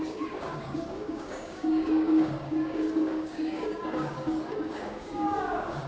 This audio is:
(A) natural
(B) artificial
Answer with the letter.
B